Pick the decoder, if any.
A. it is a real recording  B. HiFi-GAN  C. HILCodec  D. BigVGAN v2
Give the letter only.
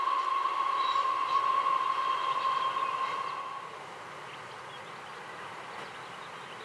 A